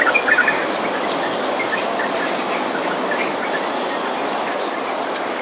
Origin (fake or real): real